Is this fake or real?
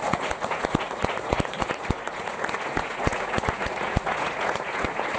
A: fake